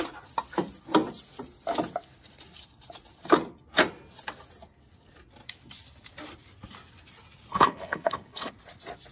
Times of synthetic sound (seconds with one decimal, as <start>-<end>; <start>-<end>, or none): 7.5-8.5